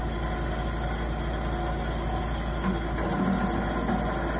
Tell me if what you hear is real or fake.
real